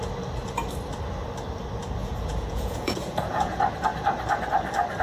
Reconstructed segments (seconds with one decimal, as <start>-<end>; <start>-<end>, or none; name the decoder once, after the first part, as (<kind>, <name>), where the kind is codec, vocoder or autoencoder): 2.0-3.6 (vocoder, Vocos)